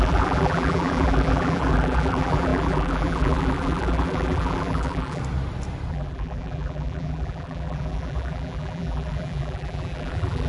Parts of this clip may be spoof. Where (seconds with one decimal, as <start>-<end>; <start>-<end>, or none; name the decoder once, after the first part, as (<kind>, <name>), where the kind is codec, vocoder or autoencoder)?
0.0-5.2 (vocoder, BigVGAN v2); 5.9-10.5